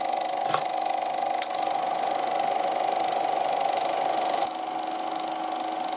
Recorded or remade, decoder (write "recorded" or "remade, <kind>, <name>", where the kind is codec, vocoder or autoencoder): recorded